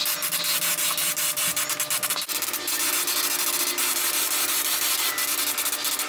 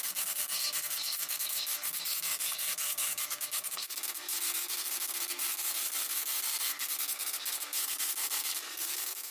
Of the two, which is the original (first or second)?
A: first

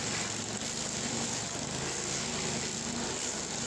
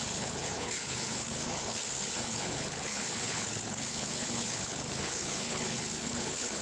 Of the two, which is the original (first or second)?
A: first